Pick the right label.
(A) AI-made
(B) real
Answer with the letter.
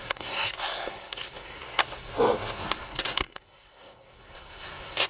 A